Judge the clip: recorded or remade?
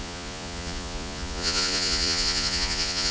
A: remade